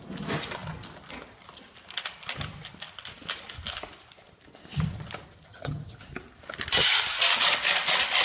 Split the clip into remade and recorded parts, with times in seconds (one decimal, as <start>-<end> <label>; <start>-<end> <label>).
0.0-5.5 recorded; 5.5-6.0 remade; 6.0-8.2 recorded